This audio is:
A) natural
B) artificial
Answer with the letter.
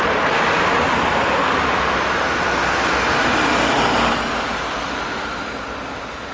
A